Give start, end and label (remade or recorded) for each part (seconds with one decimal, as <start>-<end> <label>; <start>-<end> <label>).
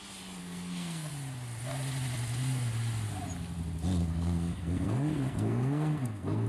0.0-0.4 recorded; 0.4-1.1 remade; 1.1-4.0 recorded; 4.0-6.5 remade